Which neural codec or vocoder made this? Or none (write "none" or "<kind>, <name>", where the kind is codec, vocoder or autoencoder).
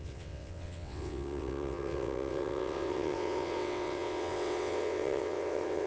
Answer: vocoder, WaveNeXt